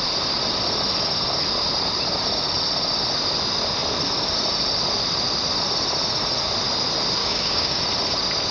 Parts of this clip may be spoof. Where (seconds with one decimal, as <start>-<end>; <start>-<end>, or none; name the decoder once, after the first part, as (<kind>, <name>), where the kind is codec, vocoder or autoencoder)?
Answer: 7.2-7.8 (codec, DAC)

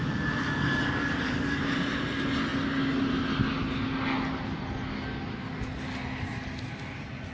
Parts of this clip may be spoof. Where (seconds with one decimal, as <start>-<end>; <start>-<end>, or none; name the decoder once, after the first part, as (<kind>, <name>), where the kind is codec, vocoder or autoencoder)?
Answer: 0.0-1.6 (codec, DAC)

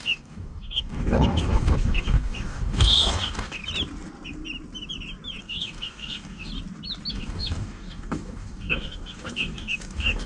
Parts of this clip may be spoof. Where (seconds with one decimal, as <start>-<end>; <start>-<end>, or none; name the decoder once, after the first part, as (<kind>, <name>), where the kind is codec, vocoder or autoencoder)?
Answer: 0.0-3.6 (codec, DAC); 5.4-6.5; 7.1-10.3

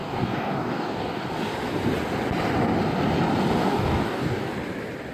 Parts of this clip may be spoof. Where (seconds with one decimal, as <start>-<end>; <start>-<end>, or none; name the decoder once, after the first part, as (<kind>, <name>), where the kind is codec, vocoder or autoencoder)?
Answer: 0.0-1.2 (codec, DAC); 3.6-4.5